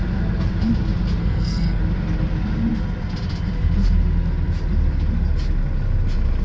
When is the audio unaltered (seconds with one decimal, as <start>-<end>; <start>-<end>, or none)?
0.0-1.2; 1.8-6.4